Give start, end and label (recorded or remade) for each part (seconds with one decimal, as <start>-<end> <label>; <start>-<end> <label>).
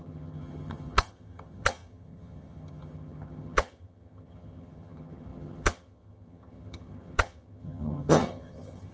0.0-8.9 remade